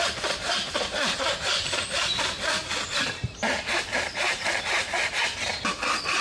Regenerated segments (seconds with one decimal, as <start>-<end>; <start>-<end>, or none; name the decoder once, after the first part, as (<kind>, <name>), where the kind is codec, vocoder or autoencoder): 3.9-4.6 (vocoder, BigVGAN v2)